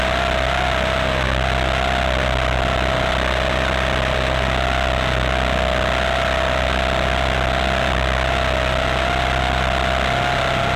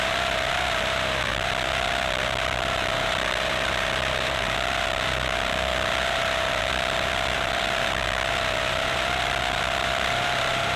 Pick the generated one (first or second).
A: second